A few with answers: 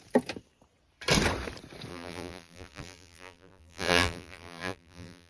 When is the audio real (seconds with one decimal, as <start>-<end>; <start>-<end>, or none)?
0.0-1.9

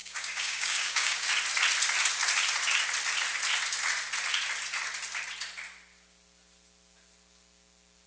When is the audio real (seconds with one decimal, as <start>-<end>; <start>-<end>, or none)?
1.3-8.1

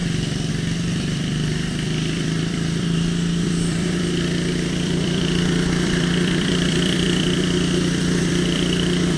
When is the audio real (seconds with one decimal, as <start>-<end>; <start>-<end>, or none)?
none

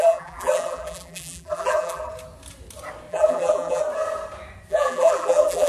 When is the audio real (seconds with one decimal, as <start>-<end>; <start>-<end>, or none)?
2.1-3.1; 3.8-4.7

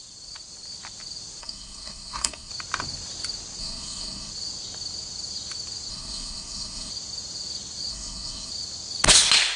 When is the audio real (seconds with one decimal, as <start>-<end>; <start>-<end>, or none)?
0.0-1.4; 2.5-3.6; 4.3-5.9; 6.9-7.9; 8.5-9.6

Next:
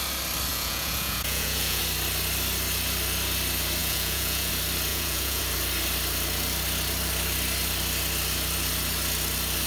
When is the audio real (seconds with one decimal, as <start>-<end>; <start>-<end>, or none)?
0.0-0.5; 1.8-3.8; 4.5-4.9; 5.4-9.7

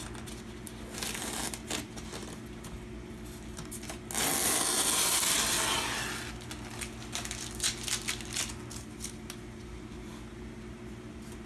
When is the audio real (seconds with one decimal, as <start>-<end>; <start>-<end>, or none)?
0.0-11.5